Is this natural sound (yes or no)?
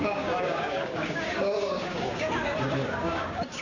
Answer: no